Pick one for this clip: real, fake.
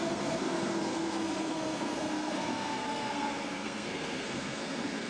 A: fake